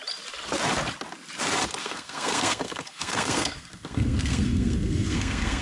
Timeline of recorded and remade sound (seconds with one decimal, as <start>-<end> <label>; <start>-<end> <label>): 0.0-1.8 recorded; 1.8-5.6 remade